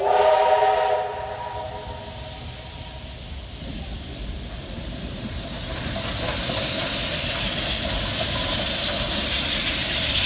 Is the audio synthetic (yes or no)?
no